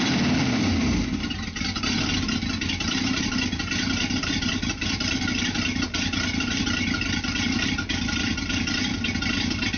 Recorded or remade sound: remade